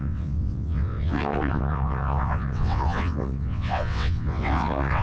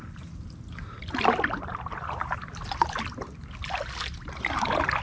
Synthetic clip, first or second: first